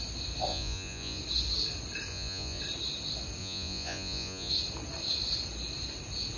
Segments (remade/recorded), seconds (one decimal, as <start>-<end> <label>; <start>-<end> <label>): 0.0-0.5 recorded; 0.5-1.2 remade; 1.2-2.1 recorded; 2.1-2.6 remade; 2.6-3.4 recorded; 3.4-4.5 remade; 4.5-6.4 recorded